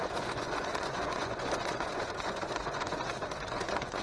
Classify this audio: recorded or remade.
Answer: remade